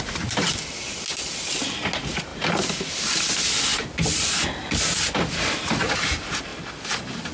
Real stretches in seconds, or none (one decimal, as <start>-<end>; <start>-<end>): 0.0-7.3